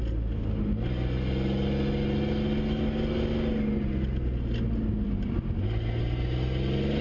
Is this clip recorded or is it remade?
recorded